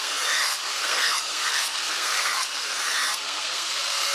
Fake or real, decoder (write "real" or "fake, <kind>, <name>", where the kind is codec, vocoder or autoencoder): fake, codec, SNAC